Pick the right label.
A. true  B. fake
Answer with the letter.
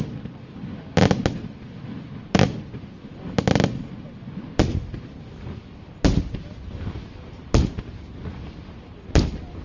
A